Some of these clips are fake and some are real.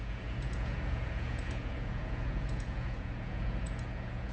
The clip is fake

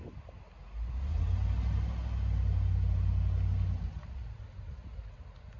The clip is real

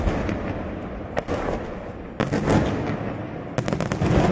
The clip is real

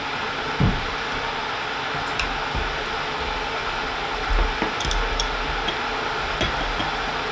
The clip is real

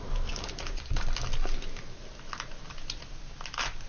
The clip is real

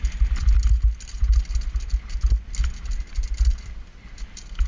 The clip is real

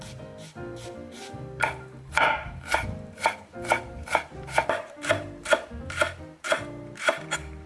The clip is fake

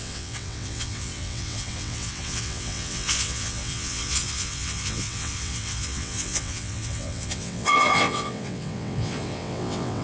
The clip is fake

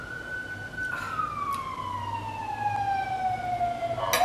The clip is real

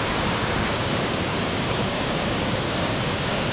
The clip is fake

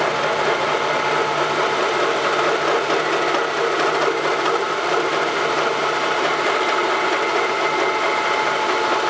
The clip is real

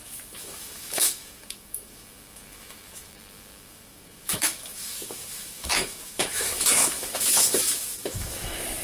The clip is fake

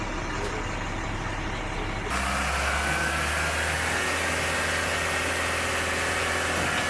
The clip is real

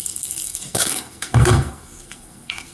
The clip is fake